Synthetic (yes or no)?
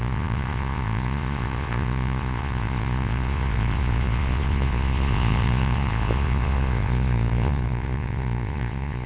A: yes